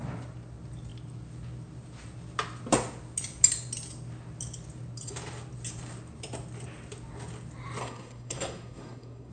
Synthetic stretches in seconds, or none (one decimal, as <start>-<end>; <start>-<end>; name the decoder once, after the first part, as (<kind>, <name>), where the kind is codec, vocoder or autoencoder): 7.8-9.3 (codec, SNAC)